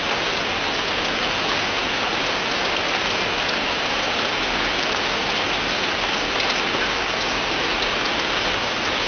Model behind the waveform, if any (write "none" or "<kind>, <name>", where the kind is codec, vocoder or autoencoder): none